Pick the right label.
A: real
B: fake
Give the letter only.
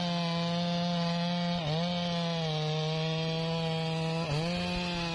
A